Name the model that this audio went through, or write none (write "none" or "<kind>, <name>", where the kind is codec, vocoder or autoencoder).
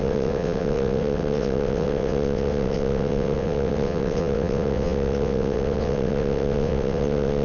vocoder, WaveNeXt